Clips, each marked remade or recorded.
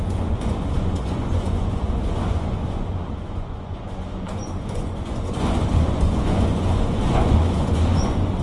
remade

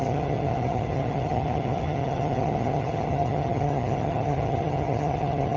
remade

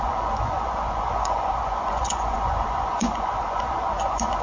remade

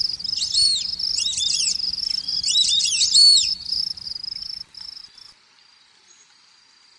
remade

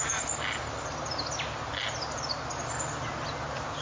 recorded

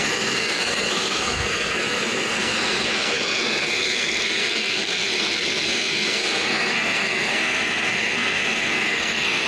remade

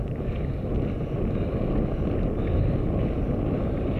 recorded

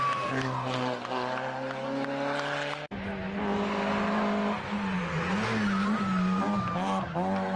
recorded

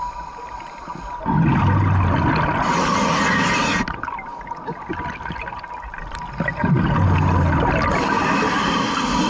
recorded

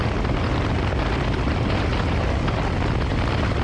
recorded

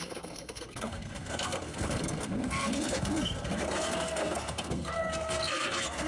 remade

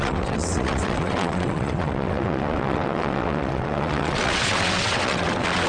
remade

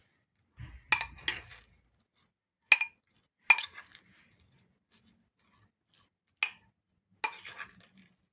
recorded